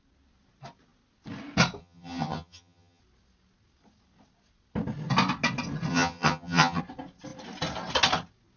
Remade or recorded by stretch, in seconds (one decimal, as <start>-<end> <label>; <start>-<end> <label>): 0.0-1.8 recorded; 1.8-3.0 remade; 3.0-5.9 recorded; 5.9-6.8 remade; 6.8-8.6 recorded